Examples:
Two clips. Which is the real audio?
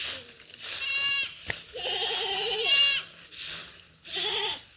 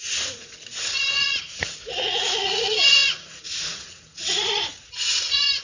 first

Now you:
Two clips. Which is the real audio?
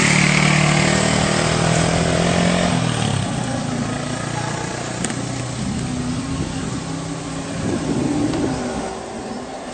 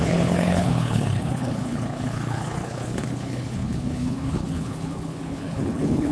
first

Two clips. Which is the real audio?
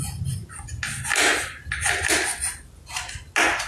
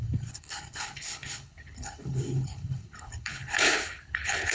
first